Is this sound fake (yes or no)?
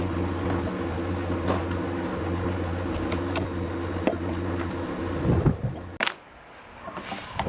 no